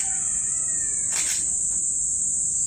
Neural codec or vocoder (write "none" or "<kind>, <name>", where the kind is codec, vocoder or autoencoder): none